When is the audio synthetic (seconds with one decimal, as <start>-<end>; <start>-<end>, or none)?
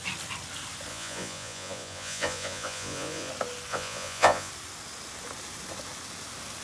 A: 0.9-3.3; 3.7-4.5